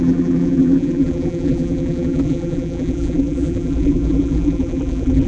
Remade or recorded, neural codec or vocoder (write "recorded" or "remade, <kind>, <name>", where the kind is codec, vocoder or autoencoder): remade, vocoder, BigVGAN v2